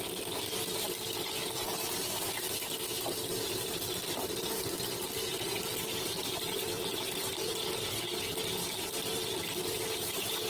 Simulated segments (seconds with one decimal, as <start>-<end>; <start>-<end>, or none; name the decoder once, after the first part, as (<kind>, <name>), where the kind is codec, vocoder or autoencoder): 0.0-1.4 (vocoder, BigVGAN v2); 3.0-10.5